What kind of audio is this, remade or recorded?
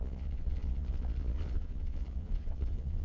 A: remade